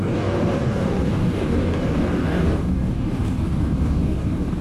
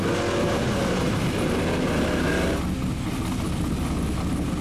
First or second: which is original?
second